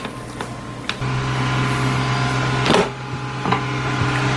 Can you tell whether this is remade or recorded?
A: recorded